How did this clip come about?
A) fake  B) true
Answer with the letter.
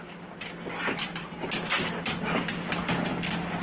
B